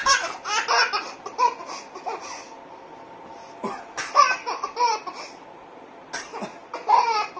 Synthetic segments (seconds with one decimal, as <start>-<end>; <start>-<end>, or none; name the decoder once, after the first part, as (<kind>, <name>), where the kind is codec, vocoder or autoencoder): none

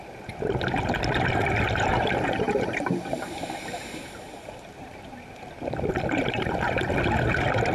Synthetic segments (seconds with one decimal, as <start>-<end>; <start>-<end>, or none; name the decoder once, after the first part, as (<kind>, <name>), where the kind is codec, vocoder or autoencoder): 1.9-5.5 (vocoder, BigVGAN v2); 5.9-6.7

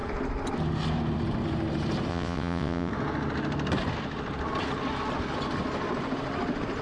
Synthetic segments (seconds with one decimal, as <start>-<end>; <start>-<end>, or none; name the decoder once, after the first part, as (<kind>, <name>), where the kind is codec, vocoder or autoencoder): 2.1-2.9 (vocoder, WaveNeXt)

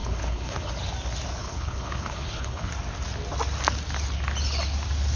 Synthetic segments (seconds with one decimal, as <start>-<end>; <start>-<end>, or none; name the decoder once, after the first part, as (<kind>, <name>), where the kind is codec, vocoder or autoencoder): 0.0-0.7 (codec, HILCodec); 1.4-2.7